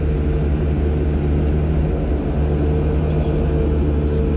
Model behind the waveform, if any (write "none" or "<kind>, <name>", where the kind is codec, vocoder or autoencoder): none